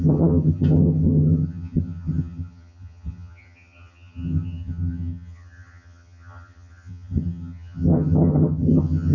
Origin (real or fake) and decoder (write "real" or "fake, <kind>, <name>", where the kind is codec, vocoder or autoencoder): fake, vocoder, HiFi-GAN